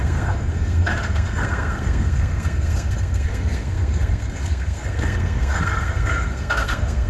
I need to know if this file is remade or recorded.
remade